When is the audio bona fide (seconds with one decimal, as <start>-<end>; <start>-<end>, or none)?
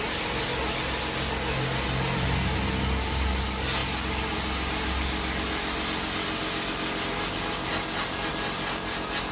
0.0-9.3